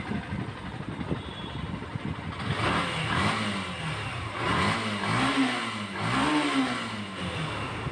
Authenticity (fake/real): real